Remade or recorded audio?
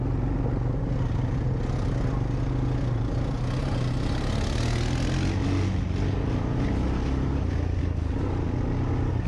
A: recorded